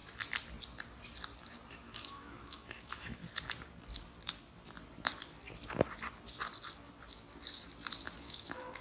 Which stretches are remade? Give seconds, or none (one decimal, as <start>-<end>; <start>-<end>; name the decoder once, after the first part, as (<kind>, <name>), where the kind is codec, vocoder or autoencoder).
1.7-3.2 (autoencoder, DAC-VAE); 8.2-8.8